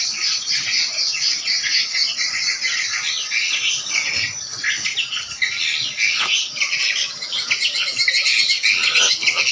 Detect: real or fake real